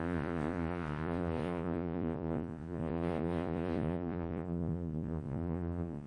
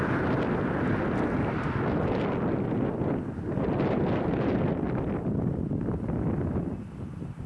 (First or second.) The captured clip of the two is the second